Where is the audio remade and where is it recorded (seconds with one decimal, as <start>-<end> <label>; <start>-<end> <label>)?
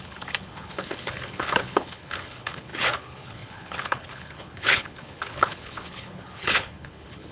0.0-7.3 remade